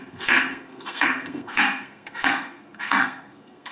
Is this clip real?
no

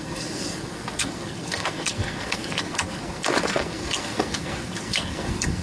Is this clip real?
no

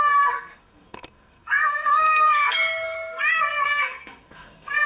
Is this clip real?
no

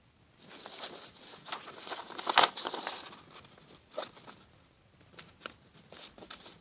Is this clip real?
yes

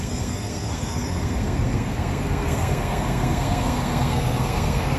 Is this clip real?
no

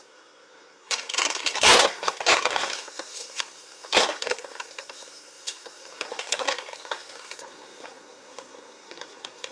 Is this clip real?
no